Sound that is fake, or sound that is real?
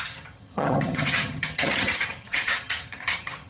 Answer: fake